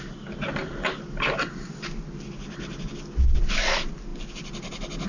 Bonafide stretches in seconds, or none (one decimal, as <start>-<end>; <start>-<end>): 0.0-5.1